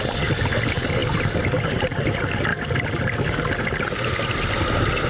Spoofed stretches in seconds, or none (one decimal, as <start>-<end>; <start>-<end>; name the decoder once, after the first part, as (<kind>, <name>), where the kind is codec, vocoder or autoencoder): none